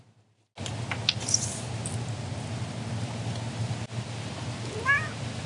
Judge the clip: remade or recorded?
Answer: recorded